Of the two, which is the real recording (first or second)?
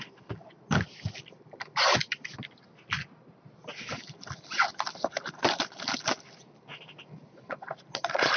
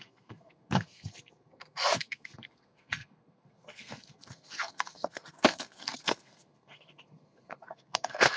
first